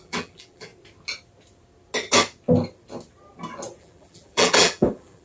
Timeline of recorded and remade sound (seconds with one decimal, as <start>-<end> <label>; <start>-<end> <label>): 0.0-0.7 remade; 0.7-3.8 recorded; 3.8-5.2 remade